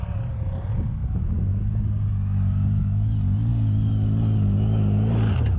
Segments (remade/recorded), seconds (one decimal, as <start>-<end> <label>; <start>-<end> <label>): 0.0-5.6 recorded